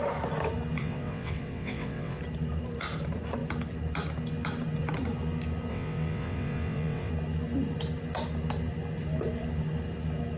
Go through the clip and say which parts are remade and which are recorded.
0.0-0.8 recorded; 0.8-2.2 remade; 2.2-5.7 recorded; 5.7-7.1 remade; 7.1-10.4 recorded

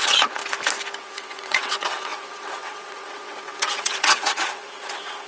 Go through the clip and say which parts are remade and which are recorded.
0.0-0.4 remade; 0.4-1.0 recorded; 1.0-5.3 remade

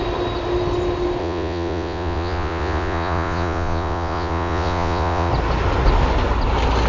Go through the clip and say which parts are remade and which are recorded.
0.0-1.2 recorded; 1.2-5.3 remade; 5.3-6.9 recorded

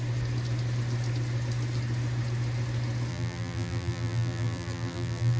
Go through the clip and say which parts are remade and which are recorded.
0.0-3.1 recorded; 3.1-5.4 remade

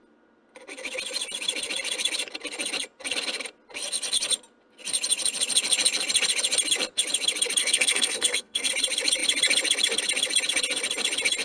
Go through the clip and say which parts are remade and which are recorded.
0.0-7.6 recorded; 7.6-8.7 remade; 8.7-11.4 recorded